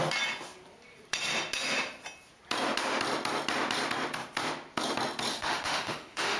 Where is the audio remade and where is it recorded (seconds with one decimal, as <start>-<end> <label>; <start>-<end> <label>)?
0.0-5.3 recorded; 5.3-6.4 remade